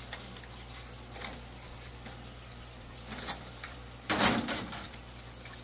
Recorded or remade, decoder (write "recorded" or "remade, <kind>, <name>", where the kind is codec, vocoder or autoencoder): remade, vocoder, BigVGAN v2